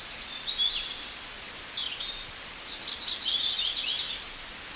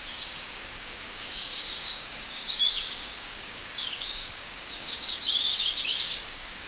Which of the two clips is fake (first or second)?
second